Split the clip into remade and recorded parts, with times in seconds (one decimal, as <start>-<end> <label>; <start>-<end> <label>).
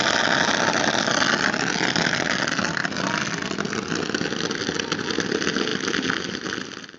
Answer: 0.0-7.0 recorded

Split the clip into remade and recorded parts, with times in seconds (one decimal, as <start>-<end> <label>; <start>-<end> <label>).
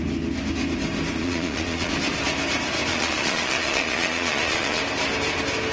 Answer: 0.0-1.2 recorded; 1.2-1.9 remade; 1.9-2.9 recorded; 2.9-4.8 remade; 4.8-5.7 recorded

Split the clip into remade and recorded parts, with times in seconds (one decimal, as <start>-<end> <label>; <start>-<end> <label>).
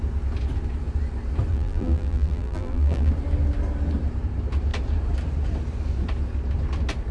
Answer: 0.0-1.5 recorded; 1.5-3.1 remade; 3.1-7.1 recorded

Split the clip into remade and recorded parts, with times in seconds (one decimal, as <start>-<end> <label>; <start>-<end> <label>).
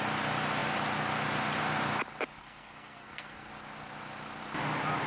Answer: 0.0-2.4 recorded; 2.4-3.5 remade; 3.5-5.1 recorded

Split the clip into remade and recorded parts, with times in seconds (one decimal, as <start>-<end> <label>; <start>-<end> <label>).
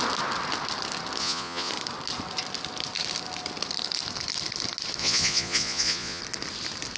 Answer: 0.0-1.2 recorded; 1.2-1.7 remade; 1.7-5.0 recorded; 5.0-6.2 remade; 6.2-7.0 recorded